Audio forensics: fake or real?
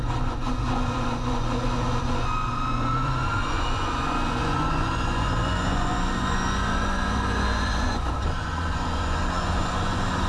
fake